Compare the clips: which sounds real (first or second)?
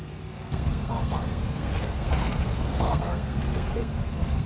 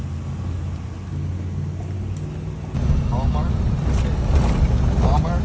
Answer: second